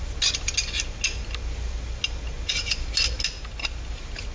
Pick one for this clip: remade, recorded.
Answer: recorded